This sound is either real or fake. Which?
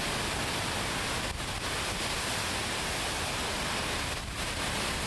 real